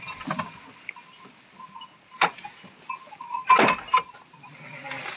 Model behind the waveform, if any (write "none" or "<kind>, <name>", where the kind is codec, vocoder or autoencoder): none